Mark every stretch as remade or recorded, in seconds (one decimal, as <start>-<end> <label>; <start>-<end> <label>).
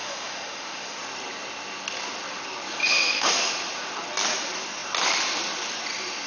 0.0-1.0 remade; 1.0-2.8 recorded; 2.8-3.5 remade; 3.5-6.3 recorded